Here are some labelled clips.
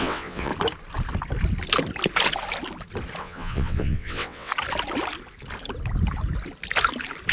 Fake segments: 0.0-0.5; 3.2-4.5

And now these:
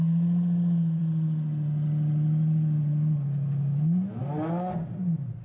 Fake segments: none